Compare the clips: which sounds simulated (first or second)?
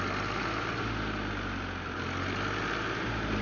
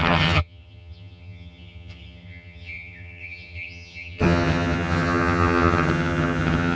second